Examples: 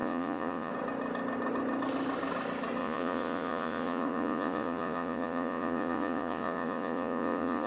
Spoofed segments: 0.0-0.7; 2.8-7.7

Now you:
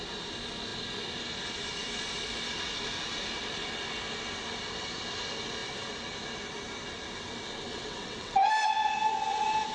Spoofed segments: 7.7-8.5

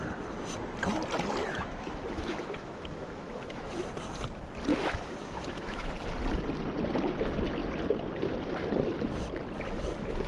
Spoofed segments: 1.4-3.9; 4.7-5.9

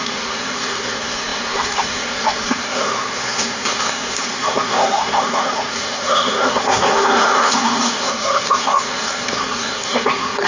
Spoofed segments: 0.0-10.5

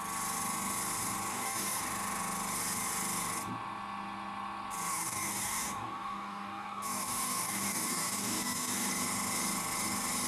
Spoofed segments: 1.3-1.8; 4.9-8.9